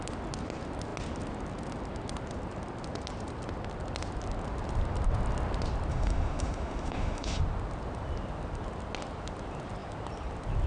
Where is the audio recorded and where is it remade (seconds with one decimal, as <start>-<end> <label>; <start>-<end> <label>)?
0.0-5.9 recorded; 5.9-7.4 remade; 7.4-10.7 recorded